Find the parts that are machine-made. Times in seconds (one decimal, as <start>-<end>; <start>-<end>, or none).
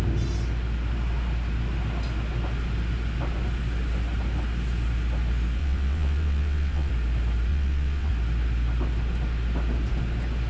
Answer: 5.6-6.9; 7.5-8.1